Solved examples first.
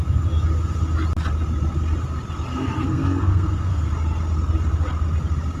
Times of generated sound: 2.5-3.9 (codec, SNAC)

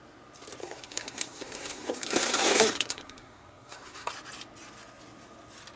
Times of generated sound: 0.6-4.1 (codec, SNAC)